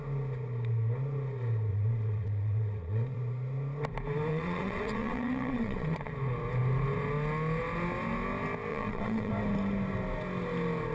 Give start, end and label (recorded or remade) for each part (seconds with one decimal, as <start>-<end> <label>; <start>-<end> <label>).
0.0-1.7 recorded; 1.7-3.2 remade; 3.2-4.3 recorded; 4.3-6.1 remade; 6.1-8.7 recorded; 8.7-9.3 remade; 9.3-10.9 recorded